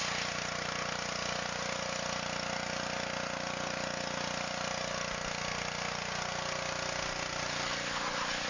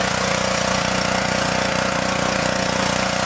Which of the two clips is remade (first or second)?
second